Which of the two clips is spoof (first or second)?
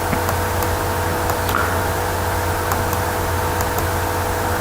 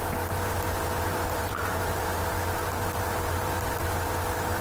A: second